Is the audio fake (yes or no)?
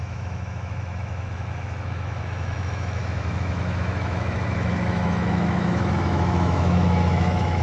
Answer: yes